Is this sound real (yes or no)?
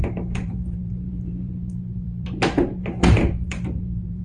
no